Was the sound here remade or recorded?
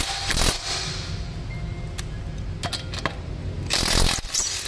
recorded